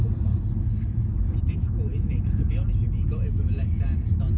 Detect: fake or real real